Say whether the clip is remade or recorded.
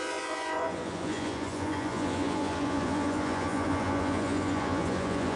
remade